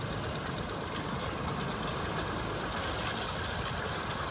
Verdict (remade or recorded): recorded